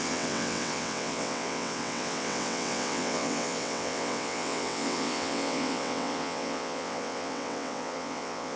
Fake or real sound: fake